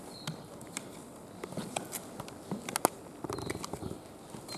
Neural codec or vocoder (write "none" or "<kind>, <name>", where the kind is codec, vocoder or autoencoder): none